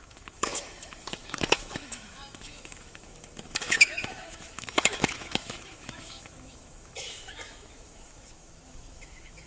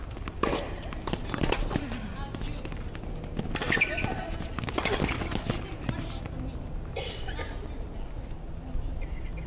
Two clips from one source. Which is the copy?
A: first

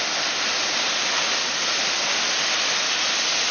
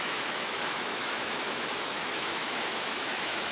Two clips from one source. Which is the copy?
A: second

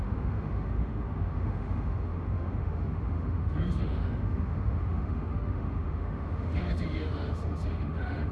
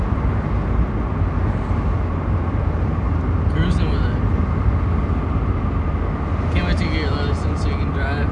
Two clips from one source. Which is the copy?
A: first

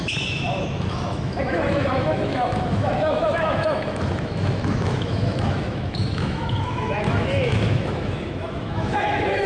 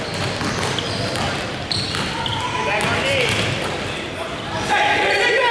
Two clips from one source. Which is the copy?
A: first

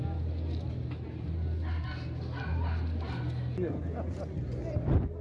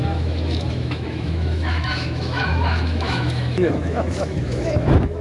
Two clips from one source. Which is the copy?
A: second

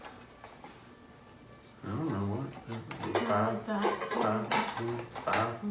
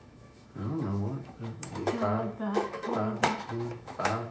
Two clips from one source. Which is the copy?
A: second